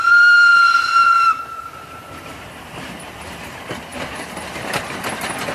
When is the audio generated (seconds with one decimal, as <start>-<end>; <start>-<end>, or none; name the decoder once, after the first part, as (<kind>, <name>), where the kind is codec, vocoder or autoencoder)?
0.5-1.4 (vocoder, BigVGAN v2); 2.3-3.1